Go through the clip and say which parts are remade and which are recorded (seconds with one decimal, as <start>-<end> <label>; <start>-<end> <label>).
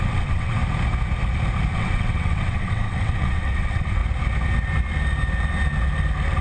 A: 0.0-0.6 remade; 0.6-1.7 recorded; 1.7-4.0 remade; 4.0-6.4 recorded